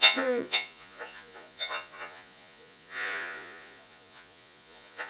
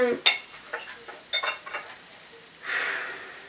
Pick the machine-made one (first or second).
first